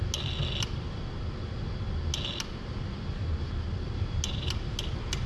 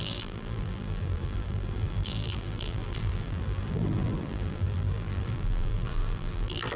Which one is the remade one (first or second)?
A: second